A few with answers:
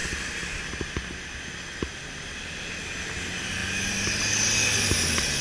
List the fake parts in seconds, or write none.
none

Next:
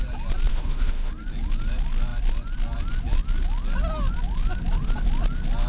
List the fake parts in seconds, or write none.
0.5-1.1 (autoencoder, DAC-VAE)

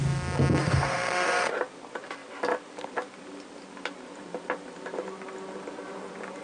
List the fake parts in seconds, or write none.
0.6-1.5 (autoencoder, DAC-VAE)

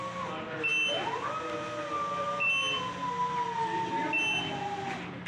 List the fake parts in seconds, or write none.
none

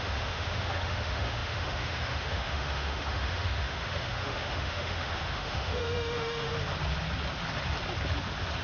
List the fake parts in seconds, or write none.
0.0-6.5 (autoencoder, DAC-VAE)

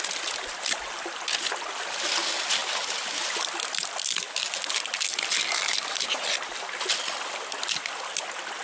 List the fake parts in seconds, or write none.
none

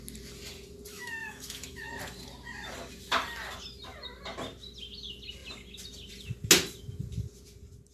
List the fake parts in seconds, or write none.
0.9-1.9 (autoencoder, DAC-VAE)

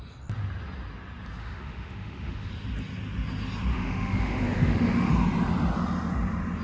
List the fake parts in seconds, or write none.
1.4-2.5 (autoencoder, DAC-VAE); 3.7-5.1